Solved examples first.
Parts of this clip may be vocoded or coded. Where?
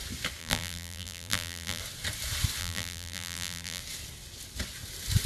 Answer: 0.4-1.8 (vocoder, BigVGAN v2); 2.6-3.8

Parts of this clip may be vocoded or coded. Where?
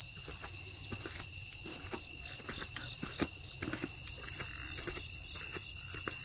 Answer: 0.0-0.6 (vocoder, BigVGAN v2); 1.7-2.4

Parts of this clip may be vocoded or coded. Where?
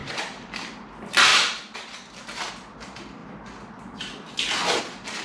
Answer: 0.0-1.3 (vocoder, BigVGAN v2); 2.5-3.2; 4.8-5.2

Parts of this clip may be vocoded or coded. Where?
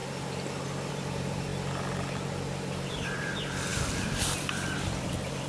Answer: 0.9-1.5 (vocoder, BigVGAN v2); 2.9-5.5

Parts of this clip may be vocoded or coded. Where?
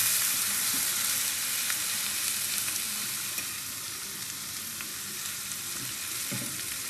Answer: 3.4-4.9 (vocoder, BigVGAN v2); 6.1-6.9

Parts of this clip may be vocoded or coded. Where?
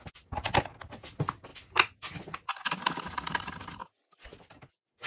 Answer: none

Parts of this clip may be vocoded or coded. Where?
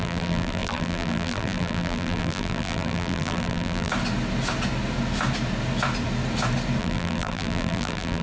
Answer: 0.0-3.9 (vocoder, BigVGAN v2); 6.8-8.2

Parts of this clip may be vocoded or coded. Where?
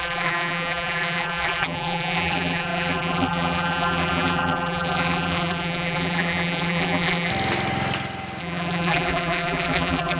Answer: 0.0-7.3 (vocoder, BigVGAN v2); 8.4-10.2